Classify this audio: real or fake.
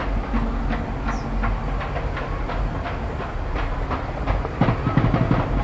real